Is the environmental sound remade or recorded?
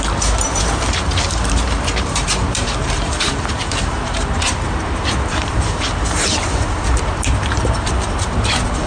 remade